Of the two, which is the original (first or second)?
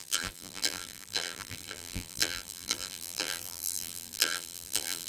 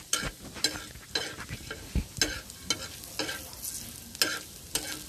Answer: second